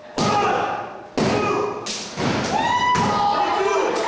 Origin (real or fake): real